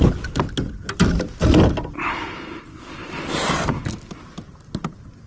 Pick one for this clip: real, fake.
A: real